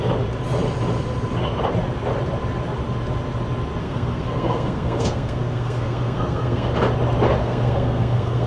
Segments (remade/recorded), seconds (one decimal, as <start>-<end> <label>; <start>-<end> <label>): 0.0-3.8 recorded; 3.8-6.7 remade; 6.7-7.4 recorded; 7.4-8.5 remade

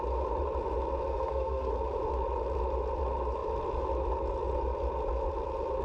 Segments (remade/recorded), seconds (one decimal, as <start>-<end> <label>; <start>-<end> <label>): 0.0-1.1 recorded; 1.1-1.7 remade; 1.7-5.8 recorded

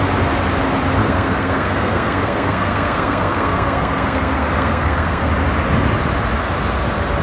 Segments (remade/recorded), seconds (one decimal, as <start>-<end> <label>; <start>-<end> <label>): 0.0-1.0 recorded; 1.0-5.3 remade; 5.3-7.2 recorded